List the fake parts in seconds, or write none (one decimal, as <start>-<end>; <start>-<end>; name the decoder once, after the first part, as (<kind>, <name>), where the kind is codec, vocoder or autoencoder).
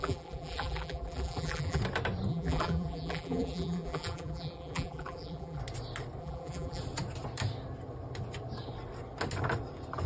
0.0-1.8 (vocoder, BigVGAN v2); 2.3-5.6; 6.2-6.8